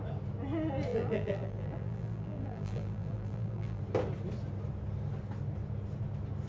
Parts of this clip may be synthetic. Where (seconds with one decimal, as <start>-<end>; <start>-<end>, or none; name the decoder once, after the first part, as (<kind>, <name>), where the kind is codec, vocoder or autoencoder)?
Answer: 0.9-3.8 (vocoder, BigVGAN v2)